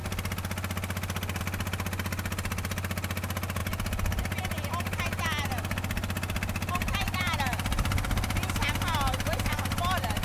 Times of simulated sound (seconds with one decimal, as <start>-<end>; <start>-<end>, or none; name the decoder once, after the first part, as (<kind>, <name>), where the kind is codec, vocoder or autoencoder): none